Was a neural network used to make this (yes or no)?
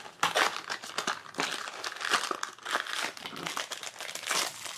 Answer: no